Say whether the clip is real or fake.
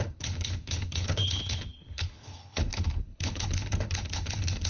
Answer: fake